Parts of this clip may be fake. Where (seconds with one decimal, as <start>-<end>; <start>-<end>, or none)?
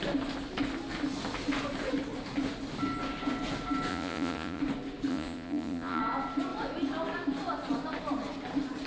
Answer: 3.9-4.6; 5.1-6.0